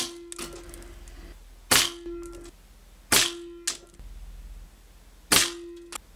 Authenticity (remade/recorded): recorded